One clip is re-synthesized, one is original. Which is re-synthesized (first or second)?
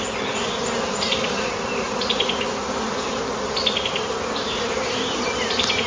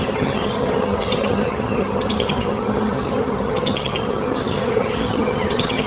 second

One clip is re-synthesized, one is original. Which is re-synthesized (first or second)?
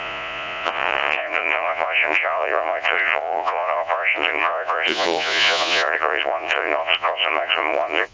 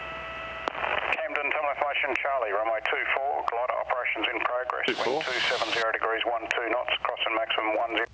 first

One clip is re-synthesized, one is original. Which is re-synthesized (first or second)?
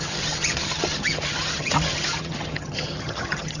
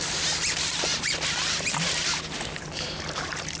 first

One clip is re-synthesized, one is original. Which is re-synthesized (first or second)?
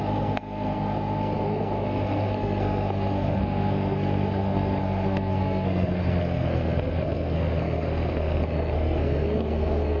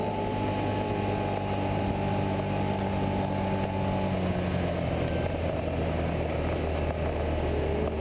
first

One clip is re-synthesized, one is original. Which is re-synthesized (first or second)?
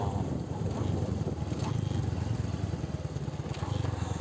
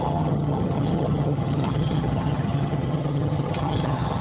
second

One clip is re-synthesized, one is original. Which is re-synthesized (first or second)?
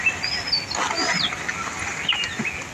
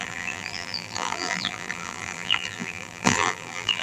second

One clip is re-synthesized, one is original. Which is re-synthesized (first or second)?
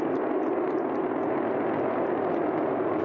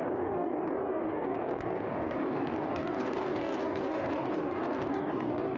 second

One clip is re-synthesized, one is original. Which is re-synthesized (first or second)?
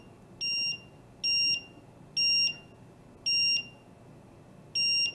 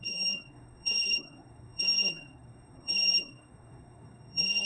second